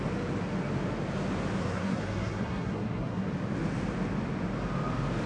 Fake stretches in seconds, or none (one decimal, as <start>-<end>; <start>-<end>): 1.6-3.3